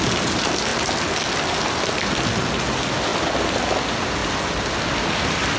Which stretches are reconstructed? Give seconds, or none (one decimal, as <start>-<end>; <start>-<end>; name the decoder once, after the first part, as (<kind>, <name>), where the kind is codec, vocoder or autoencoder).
none